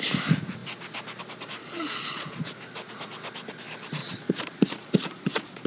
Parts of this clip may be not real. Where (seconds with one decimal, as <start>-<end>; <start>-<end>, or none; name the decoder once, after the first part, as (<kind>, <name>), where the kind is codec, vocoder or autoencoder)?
1.6-2.4 (vocoder, Vocos); 4.0-5.7